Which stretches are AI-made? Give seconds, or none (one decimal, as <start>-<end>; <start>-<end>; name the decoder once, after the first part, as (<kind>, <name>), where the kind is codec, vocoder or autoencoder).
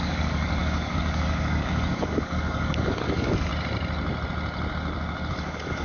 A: 0.0-3.5 (codec, DAC); 5.3-5.8